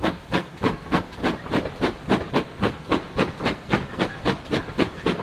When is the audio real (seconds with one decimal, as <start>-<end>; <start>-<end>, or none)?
1.2-2.3